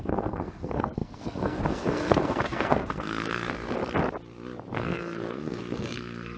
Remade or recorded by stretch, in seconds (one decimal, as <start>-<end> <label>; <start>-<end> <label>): 0.0-3.8 remade; 3.8-4.7 recorded; 4.7-6.4 remade